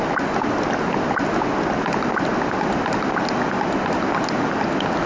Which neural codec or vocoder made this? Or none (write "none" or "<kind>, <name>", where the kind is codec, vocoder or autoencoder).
none